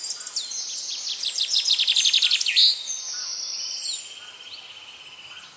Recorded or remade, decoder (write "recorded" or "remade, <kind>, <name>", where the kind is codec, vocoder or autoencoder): recorded